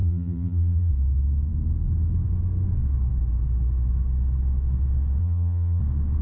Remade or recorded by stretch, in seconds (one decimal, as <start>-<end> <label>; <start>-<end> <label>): 0.0-0.9 remade; 0.9-5.2 recorded; 5.2-5.8 remade; 5.8-6.2 recorded